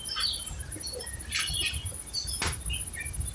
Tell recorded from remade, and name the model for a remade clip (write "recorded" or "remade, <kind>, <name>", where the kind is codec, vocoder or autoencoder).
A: remade, vocoder, BigVGAN v2